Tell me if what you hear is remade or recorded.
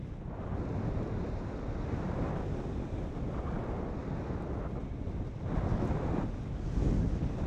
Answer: recorded